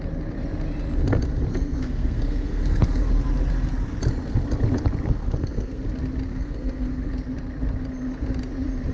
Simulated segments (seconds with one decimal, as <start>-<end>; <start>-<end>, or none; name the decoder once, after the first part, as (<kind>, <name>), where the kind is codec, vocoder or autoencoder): 1.5-3.1 (codec, SNAC); 5.2-5.8; 6.3-7.1